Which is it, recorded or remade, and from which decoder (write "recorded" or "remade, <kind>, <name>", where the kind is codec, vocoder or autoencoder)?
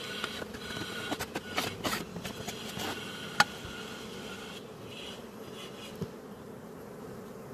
recorded